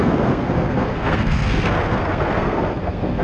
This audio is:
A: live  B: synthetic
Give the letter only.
B